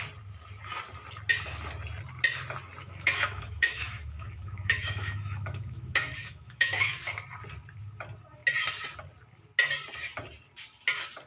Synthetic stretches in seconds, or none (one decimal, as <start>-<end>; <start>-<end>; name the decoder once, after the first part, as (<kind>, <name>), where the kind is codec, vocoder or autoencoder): 2.8-7.0 (autoencoder, DAC-VAE)